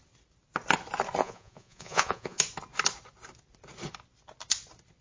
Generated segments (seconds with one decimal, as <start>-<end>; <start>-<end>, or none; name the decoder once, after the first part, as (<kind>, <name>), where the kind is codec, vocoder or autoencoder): 1.2-2.4 (vocoder, Vocos)